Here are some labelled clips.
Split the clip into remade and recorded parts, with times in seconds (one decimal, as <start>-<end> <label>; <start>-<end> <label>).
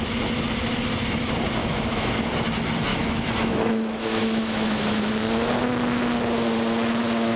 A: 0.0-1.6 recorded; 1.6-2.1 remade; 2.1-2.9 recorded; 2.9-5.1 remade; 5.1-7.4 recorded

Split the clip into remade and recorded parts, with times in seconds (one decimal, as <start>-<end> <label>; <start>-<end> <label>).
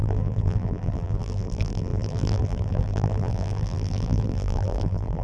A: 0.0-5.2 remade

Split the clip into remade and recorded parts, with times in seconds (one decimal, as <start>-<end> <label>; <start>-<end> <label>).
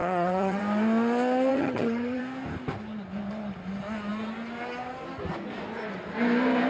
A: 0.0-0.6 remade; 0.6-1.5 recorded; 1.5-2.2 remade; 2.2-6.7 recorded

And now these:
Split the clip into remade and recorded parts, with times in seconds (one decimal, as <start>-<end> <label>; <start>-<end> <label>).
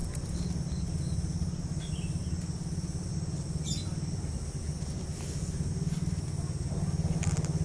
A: 0.0-7.6 recorded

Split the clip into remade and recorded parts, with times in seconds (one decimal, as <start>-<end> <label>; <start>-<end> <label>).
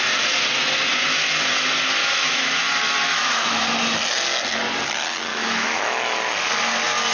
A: 0.0-2.0 recorded; 2.0-2.6 remade; 2.6-3.1 recorded; 3.1-3.6 remade; 3.6-5.3 recorded; 5.3-6.2 remade; 6.2-7.1 recorded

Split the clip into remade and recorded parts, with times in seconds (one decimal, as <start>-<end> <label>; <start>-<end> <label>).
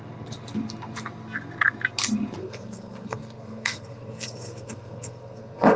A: 0.0-2.4 recorded; 2.4-5.8 remade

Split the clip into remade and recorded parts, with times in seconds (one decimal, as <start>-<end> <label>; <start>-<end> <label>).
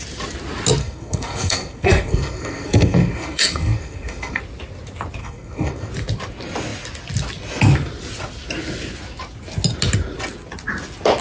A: 0.0-0.8 recorded; 0.8-4.4 remade; 4.4-5.2 recorded; 5.2-5.9 remade; 5.9-11.2 recorded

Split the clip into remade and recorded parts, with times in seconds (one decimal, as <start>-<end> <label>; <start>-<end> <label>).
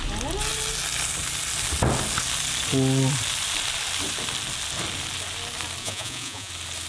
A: 0.0-5.8 recorded; 5.8-6.5 remade; 6.5-6.9 recorded